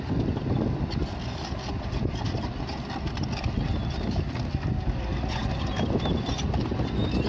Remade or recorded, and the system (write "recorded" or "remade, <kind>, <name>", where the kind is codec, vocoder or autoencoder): recorded